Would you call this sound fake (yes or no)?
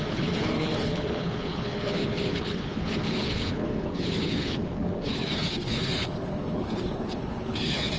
yes